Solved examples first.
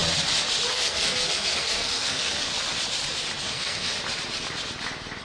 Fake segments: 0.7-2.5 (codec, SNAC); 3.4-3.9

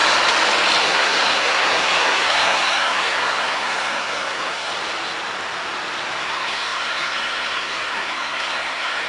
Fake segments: 0.8-4.7 (codec, SNAC); 6.2-9.1

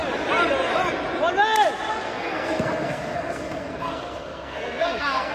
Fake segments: 1.9-5.3 (codec, SNAC)

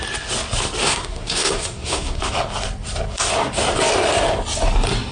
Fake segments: 0.8-2.2 (codec, SNAC)

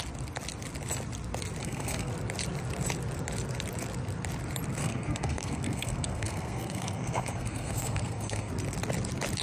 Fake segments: 1.6-2.1 (codec, SNAC); 4.8-8.5

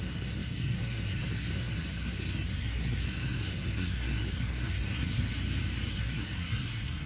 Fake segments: 0.0-5.3 (codec, SNAC); 5.9-7.1